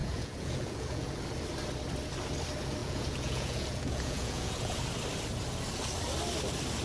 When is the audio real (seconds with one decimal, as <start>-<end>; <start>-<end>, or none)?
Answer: 1.2-2.8; 4.8-6.8